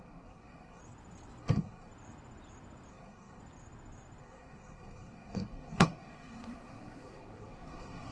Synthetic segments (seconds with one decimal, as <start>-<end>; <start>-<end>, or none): 0.0-0.8; 1.4-1.9; 2.9-3.4; 4.2-8.1